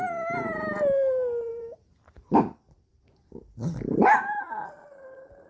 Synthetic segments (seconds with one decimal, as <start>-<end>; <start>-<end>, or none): 1.5-2.4